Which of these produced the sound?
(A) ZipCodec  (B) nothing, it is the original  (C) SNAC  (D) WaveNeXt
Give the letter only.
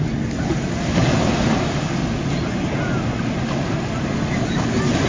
B